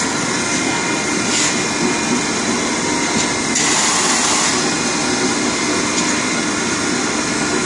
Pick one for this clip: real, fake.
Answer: real